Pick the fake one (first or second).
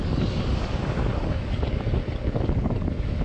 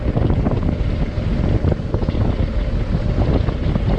first